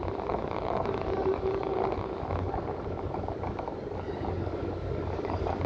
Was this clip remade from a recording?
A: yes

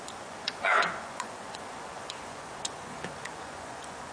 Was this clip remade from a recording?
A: yes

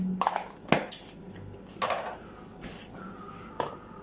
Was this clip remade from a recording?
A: no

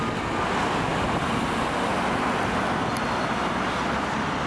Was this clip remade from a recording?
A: no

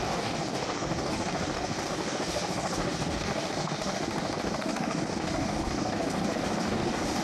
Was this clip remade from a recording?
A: yes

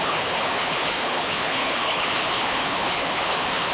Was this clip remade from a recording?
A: yes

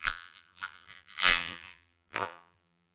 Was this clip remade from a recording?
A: yes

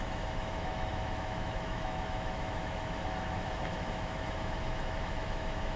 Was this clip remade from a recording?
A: yes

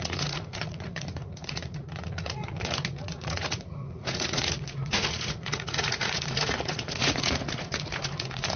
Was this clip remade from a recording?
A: yes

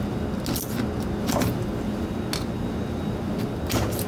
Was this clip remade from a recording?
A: no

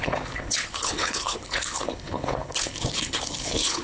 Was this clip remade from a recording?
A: yes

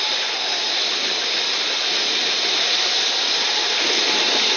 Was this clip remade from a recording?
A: no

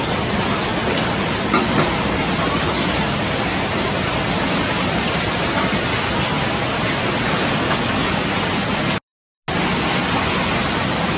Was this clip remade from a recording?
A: no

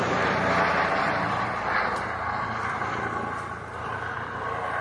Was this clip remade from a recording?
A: yes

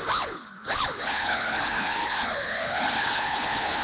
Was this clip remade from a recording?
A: yes